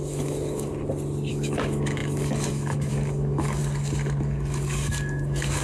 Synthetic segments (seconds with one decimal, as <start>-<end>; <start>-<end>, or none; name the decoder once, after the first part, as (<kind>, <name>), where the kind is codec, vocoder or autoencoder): 0.0-0.7 (codec, DAC); 1.3-3.6; 4.2-5.6